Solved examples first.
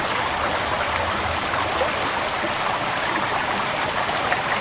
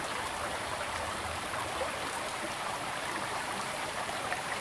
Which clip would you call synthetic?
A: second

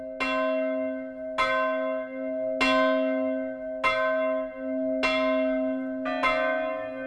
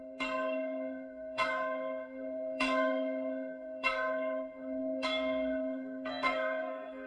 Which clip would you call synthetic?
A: second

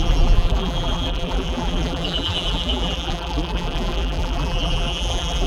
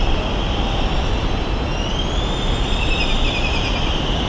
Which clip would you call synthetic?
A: first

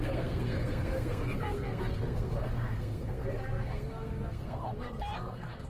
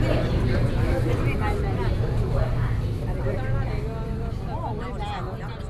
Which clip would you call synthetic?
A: first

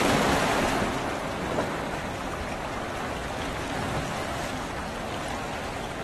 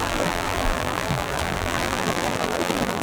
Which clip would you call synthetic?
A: second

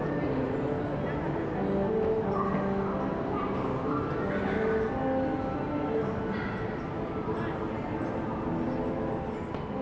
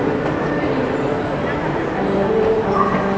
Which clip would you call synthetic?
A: second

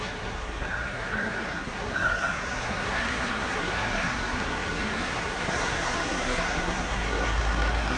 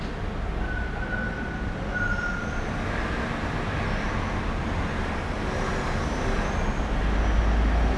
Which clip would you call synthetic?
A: first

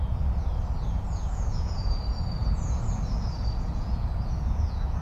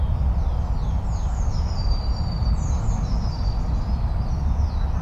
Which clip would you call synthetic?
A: first